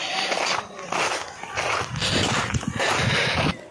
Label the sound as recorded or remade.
recorded